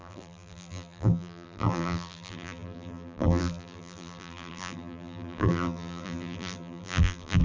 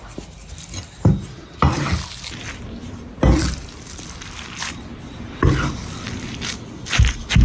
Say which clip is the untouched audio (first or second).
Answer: second